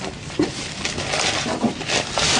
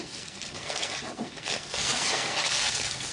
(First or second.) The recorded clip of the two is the first